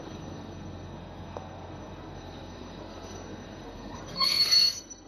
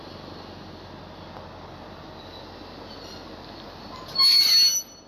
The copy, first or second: first